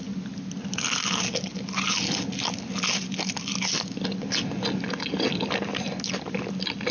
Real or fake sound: real